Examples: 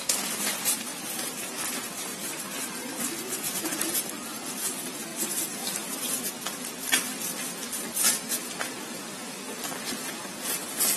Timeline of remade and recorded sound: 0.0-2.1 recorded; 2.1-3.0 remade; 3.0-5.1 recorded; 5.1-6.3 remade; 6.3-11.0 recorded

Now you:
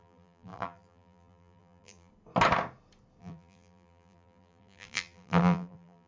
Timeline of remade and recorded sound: 0.0-2.1 remade; 2.1-3.2 recorded; 3.2-6.1 remade

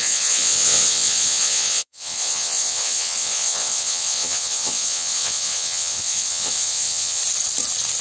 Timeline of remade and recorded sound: 0.0-7.2 remade; 7.2-8.0 recorded

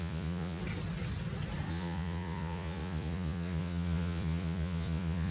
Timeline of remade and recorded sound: 0.0-0.6 remade; 0.6-1.7 recorded; 1.7-5.3 remade

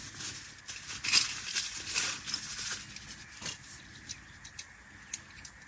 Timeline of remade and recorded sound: 0.0-5.7 recorded